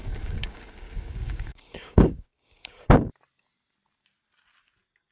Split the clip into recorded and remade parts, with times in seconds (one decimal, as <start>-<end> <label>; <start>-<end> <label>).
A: 0.0-3.1 remade; 3.1-5.1 recorded